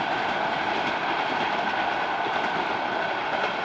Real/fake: real